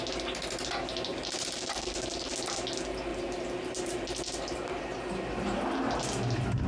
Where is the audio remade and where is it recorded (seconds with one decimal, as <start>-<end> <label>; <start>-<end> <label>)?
0.0-1.1 recorded; 1.1-2.3 remade; 2.3-3.1 recorded; 3.1-4.8 remade; 4.8-6.7 recorded